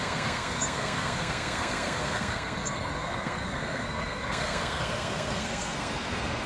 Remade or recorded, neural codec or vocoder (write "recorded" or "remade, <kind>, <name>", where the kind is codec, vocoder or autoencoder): remade, codec, SNAC